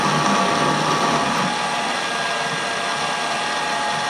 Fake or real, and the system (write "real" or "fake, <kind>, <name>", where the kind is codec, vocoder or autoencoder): real